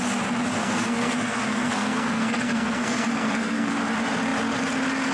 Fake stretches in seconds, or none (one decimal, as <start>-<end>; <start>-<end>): 0.6-3.7